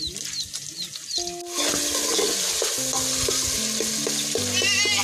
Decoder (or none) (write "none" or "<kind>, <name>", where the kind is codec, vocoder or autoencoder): none